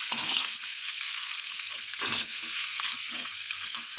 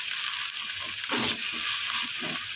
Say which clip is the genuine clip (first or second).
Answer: second